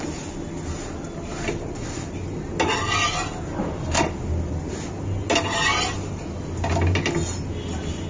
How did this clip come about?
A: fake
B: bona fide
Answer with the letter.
B